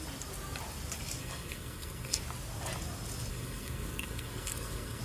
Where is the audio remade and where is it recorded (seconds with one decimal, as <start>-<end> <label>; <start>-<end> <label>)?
0.0-1.2 recorded; 1.2-2.2 remade; 2.2-3.3 recorded; 3.3-5.0 remade

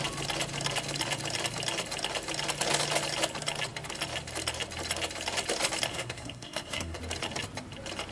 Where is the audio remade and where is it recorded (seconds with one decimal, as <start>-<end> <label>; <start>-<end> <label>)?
0.0-5.9 recorded; 5.9-7.0 remade; 7.0-8.1 recorded

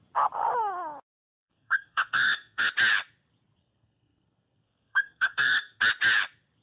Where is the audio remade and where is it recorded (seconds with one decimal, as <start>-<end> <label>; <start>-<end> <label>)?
0.0-1.3 recorded; 1.3-2.7 remade; 2.7-3.6 recorded; 3.6-5.8 remade; 5.8-6.6 recorded